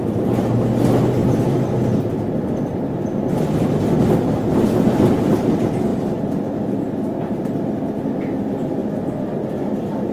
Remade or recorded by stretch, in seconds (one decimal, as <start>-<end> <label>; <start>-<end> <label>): 0.0-1.2 recorded; 1.2-4.0 remade; 4.0-5.9 recorded; 5.9-7.2 remade; 7.2-8.8 recorded; 8.8-10.1 remade